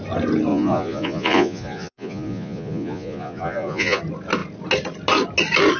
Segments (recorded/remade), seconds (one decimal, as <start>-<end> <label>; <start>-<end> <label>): 0.0-0.5 recorded; 0.5-4.0 remade; 4.0-5.8 recorded